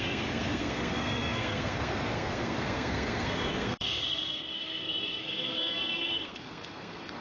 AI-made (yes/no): yes